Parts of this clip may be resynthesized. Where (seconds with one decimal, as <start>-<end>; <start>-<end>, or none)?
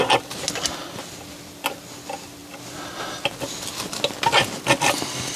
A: none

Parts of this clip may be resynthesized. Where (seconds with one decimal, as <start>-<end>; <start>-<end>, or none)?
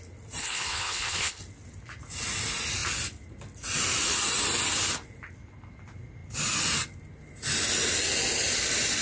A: 0.4-1.4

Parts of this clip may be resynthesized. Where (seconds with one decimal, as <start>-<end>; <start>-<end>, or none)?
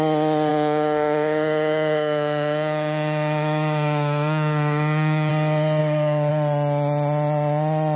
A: 0.5-5.3; 5.8-6.3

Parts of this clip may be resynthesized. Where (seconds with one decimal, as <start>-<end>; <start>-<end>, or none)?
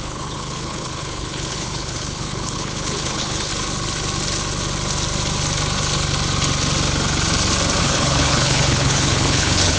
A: 0.0-3.5; 7.8-9.8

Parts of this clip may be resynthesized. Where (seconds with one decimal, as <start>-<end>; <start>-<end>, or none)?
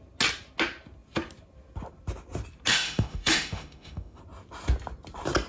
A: 2.7-4.2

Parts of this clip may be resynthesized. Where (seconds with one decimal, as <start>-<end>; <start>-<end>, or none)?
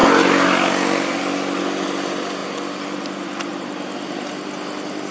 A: none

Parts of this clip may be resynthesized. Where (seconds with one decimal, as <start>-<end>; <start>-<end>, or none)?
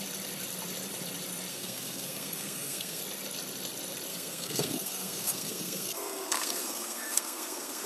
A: 1.5-3.0; 4.1-7.9